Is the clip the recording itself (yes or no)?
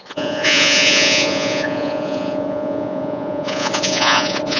no